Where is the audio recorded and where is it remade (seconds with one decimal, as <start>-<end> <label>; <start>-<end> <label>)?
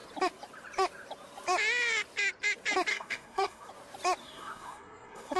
0.0-2.9 recorded; 2.9-3.7 remade; 3.7-4.2 recorded; 4.2-5.4 remade